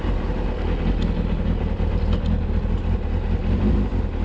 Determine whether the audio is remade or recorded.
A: recorded